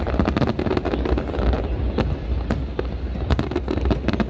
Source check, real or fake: real